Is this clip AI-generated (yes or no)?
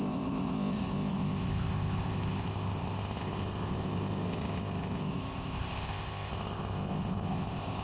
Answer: yes